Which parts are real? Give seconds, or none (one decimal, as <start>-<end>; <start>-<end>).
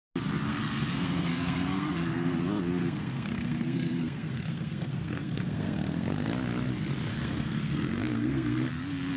0.0-0.5; 2.3-2.8; 6.3-7.1; 8.7-9.2